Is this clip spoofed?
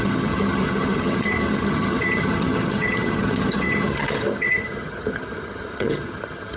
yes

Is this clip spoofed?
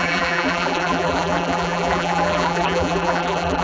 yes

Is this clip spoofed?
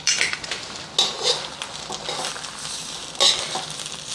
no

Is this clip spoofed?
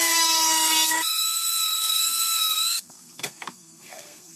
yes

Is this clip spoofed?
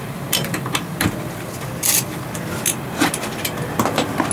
no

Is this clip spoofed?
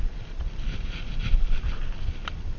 no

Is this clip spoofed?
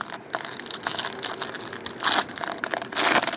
no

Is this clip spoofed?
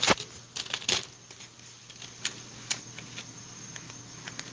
no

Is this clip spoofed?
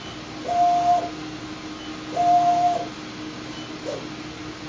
no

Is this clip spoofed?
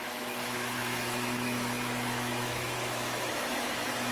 yes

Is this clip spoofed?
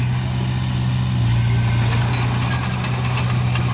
no